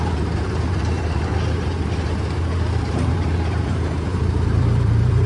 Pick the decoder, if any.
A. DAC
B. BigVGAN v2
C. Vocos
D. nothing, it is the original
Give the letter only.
B